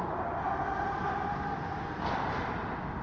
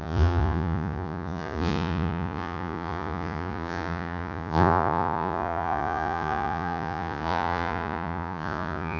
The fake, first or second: second